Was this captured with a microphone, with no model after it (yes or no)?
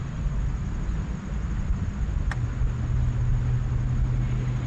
yes